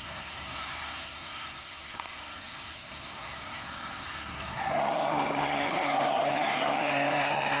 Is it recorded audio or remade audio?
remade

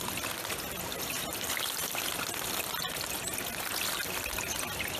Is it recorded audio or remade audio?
recorded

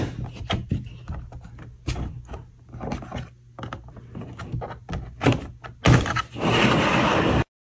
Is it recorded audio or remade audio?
recorded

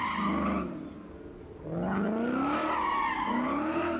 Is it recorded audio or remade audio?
recorded